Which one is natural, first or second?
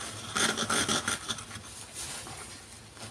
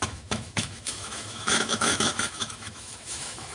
first